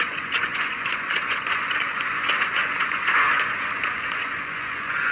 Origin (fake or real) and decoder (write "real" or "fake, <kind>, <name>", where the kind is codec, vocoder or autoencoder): fake, vocoder, Vocos